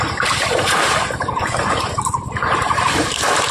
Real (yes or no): no